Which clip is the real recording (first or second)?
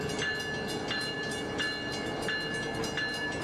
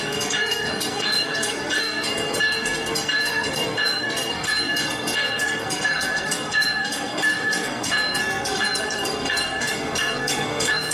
first